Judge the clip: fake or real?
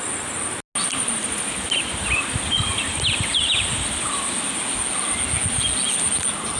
real